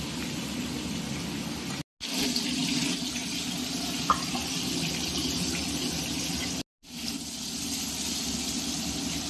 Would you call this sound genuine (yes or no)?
yes